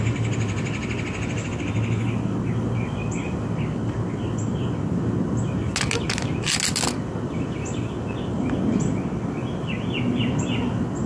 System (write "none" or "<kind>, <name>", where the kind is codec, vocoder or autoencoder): none